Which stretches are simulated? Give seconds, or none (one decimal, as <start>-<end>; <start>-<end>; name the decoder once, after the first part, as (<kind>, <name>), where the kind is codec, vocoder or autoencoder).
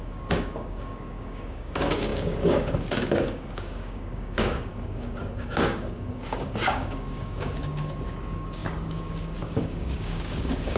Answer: 0.0-10.8 (codec, DAC)